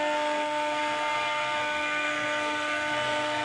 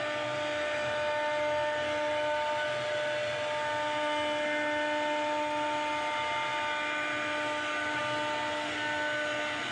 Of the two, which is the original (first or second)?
second